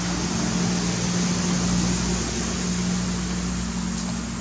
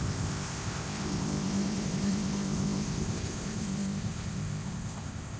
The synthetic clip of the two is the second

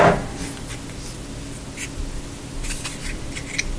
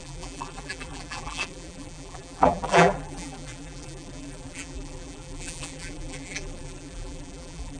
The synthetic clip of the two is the second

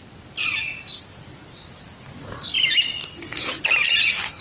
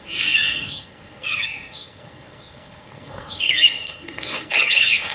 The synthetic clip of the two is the second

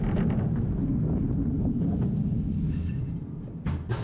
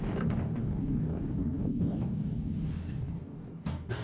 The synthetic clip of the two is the second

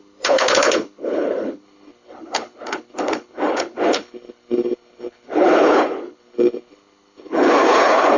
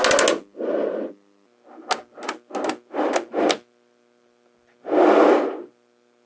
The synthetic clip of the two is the first